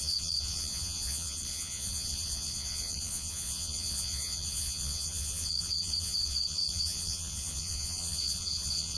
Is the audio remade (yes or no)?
yes